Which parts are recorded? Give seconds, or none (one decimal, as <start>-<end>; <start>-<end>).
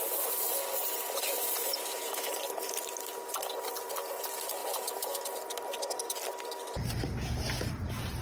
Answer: 3.1-3.7